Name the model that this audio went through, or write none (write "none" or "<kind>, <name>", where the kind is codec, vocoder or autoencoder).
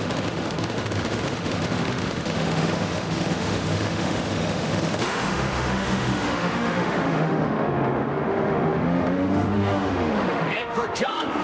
autoencoder, DAC-VAE